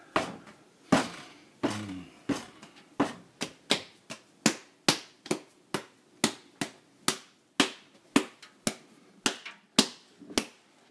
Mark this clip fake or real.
real